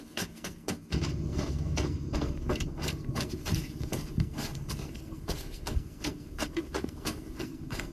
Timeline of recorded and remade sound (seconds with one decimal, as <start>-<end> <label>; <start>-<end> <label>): 0.0-7.9 remade